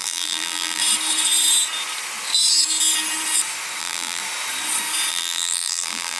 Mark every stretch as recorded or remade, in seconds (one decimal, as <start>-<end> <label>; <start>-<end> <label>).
0.0-0.8 remade; 0.8-3.8 recorded; 3.8-4.2 remade; 4.2-5.1 recorded; 5.1-6.2 remade